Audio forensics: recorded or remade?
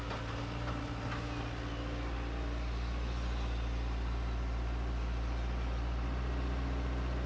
recorded